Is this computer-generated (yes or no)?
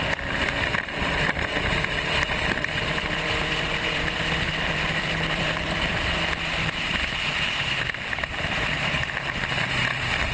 yes